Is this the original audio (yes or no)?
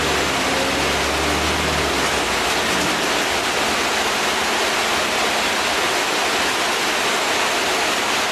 yes